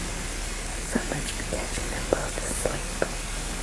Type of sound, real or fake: fake